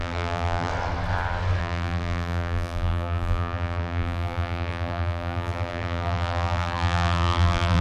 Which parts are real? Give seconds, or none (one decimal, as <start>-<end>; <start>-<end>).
0.7-1.6